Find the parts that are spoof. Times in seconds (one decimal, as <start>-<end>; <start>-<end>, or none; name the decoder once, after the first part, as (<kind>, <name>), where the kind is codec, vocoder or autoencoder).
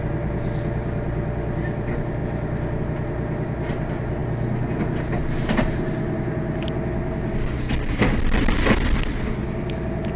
none